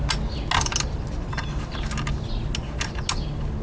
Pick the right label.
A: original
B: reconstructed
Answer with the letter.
A